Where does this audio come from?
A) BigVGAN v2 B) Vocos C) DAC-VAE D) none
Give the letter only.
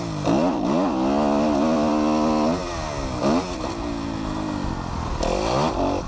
D